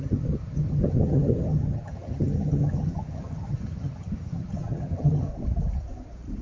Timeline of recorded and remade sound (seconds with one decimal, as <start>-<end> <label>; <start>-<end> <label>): 0.0-5.3 remade; 5.3-6.4 recorded